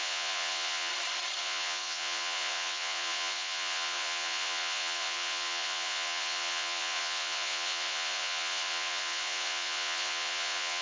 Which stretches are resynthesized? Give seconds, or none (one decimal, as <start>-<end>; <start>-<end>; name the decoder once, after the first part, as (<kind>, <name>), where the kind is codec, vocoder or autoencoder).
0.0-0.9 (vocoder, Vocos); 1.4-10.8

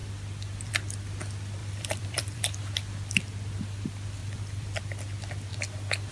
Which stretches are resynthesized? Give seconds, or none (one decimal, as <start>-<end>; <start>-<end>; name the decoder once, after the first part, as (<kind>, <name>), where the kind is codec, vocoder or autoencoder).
1.6-2.4 (vocoder, BigVGAN v2); 4.2-4.8

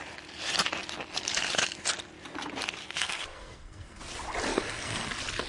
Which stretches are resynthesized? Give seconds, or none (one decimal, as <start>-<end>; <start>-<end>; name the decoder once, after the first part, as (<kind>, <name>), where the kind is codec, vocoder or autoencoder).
2.8-4.0 (codec, SNAC); 4.5-5.1

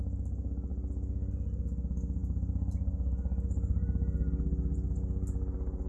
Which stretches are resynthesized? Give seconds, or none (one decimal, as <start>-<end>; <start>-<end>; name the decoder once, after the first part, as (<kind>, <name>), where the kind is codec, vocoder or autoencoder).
none